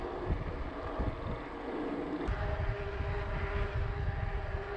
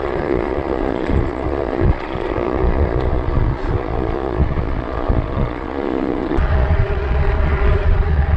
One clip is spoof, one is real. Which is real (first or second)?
first